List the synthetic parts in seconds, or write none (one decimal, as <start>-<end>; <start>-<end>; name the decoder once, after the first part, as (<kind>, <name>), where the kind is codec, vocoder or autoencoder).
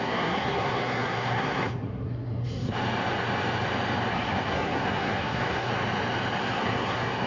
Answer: 0.0-2.7 (codec, SNAC); 4.1-5.7; 6.4-7.3